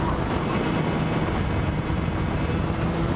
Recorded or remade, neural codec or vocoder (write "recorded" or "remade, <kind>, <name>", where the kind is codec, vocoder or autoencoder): recorded